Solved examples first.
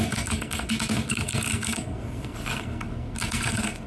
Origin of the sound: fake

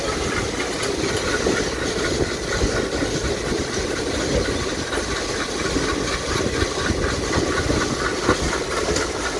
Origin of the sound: real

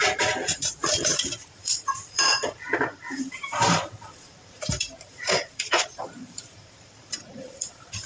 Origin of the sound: fake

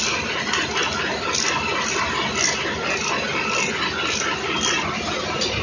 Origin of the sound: real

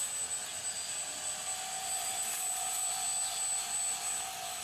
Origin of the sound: real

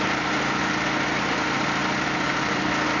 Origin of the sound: real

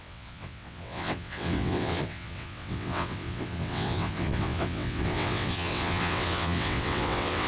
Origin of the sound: fake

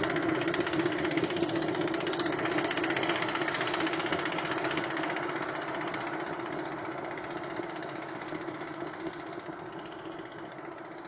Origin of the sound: real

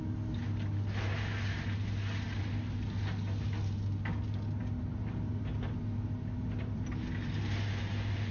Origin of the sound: real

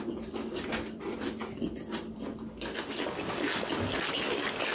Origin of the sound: real